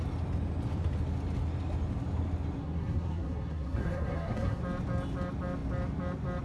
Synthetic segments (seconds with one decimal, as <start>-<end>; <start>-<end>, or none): 2.6-4.6